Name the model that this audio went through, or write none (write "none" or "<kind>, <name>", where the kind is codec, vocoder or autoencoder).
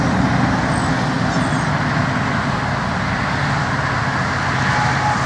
none